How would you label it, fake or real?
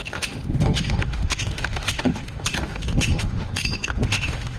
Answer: fake